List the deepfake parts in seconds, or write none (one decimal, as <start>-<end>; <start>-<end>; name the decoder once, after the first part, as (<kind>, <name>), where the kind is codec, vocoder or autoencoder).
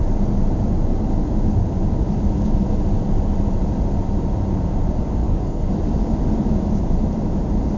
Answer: 5.2-5.7 (codec, DAC)